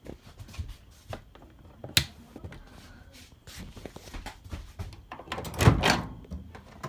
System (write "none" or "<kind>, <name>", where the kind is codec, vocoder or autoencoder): none